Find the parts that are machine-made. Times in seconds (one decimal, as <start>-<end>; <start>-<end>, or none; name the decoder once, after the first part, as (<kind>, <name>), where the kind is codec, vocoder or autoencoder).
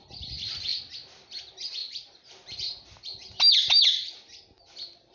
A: none